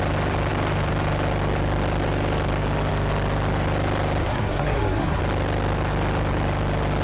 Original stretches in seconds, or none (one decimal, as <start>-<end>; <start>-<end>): 0.0-4.2; 5.2-7.0

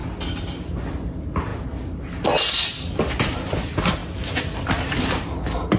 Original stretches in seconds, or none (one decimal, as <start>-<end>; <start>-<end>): 0.0-0.9; 1.5-3.2

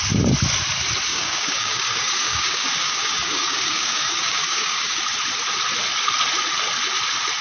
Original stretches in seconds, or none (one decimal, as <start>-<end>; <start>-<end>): 0.0-1.1; 5.0-7.4